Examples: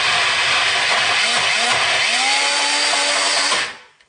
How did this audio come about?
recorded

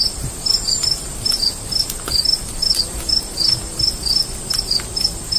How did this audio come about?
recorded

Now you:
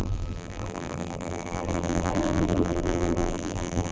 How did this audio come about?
remade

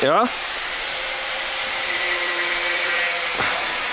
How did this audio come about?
remade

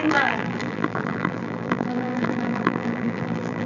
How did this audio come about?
remade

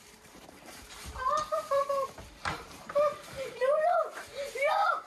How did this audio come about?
remade